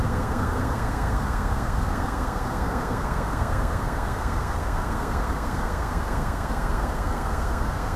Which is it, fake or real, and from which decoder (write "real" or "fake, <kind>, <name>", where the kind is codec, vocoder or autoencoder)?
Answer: fake, codec, SNAC